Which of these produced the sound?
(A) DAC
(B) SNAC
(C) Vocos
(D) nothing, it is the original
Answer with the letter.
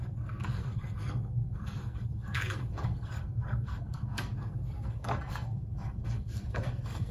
B